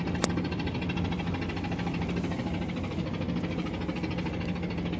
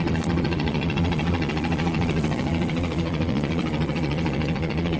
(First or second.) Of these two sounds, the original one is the first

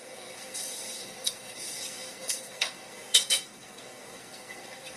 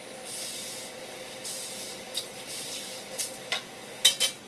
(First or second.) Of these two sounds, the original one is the second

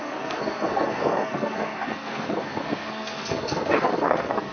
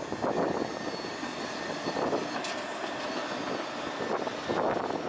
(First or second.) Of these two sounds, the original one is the second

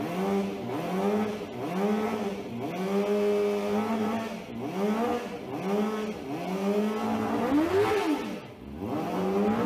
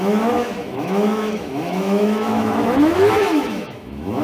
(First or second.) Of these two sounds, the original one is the first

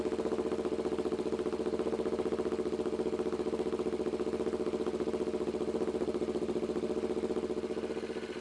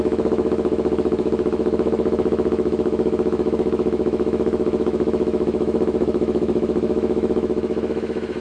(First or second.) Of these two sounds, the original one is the first